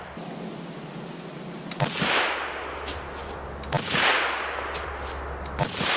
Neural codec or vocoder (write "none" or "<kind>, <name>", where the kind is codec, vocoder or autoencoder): none